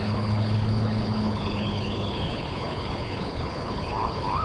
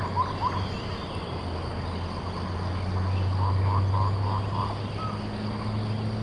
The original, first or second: second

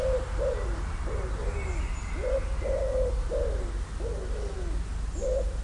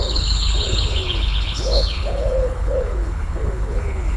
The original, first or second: first